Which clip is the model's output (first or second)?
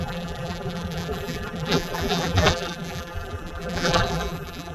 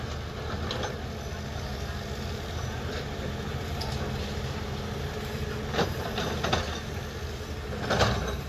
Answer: first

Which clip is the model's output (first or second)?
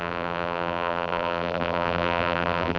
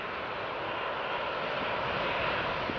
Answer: first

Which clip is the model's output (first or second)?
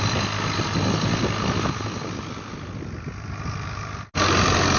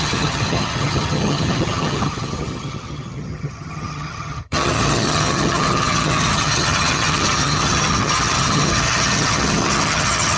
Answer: second